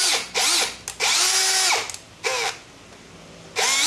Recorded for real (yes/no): yes